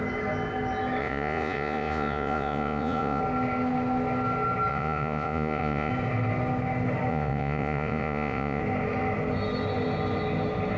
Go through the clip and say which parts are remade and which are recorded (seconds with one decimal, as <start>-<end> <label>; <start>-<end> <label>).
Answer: 0.0-1.0 recorded; 1.0-3.2 remade; 3.2-4.7 recorded; 4.7-5.9 remade; 5.9-7.1 recorded; 7.1-8.6 remade; 8.6-10.8 recorded